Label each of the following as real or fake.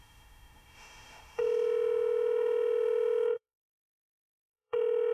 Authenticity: fake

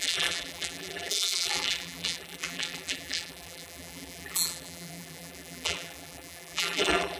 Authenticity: fake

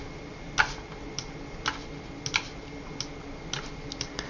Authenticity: real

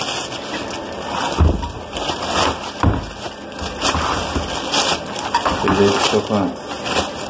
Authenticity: real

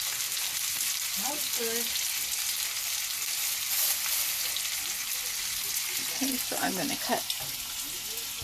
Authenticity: real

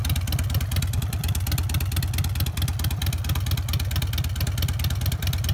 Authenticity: real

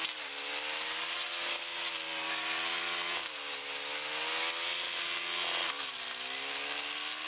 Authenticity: real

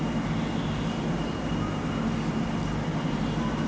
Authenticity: real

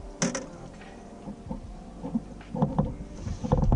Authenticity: real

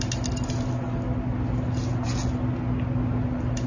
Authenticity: real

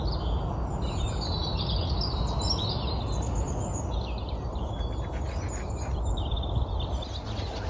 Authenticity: real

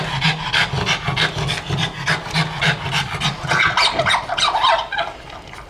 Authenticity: real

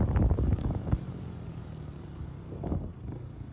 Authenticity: fake